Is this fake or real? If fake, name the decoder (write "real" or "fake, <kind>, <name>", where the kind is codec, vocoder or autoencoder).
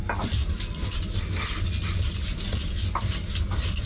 real